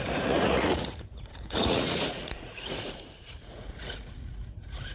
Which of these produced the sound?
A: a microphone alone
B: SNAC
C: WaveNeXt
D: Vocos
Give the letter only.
D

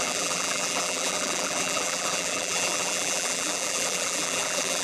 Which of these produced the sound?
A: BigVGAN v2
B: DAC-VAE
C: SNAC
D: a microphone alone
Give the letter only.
A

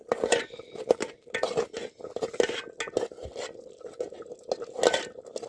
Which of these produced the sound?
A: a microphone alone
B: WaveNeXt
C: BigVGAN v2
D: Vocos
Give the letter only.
A